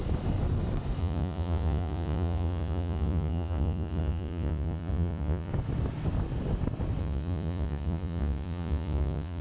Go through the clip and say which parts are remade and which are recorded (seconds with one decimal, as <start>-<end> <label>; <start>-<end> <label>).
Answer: 0.0-1.0 recorded; 1.0-5.5 remade; 5.5-7.0 recorded; 7.0-9.4 remade

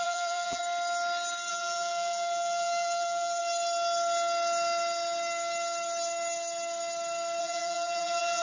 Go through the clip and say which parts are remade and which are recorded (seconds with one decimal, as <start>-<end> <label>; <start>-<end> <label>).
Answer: 0.0-0.6 remade; 0.6-1.5 recorded; 1.5-3.4 remade; 3.4-7.4 recorded; 7.4-8.4 remade